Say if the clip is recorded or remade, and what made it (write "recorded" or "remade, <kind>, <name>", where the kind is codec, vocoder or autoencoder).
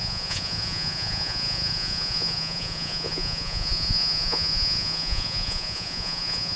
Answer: remade, vocoder, Vocos